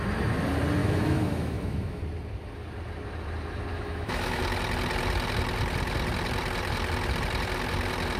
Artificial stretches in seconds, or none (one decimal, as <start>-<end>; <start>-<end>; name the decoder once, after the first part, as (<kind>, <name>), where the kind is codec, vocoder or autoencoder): 0.8-2.0 (autoencoder, DAC-VAE); 3.7-4.4